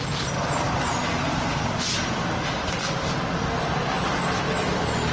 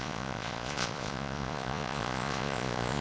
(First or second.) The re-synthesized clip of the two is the second